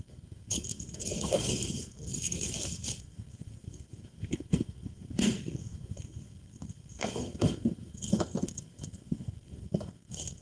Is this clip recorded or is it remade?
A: remade